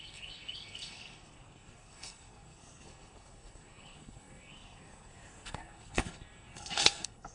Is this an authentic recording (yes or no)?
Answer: no